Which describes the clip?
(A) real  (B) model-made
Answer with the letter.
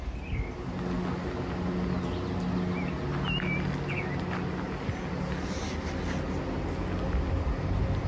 A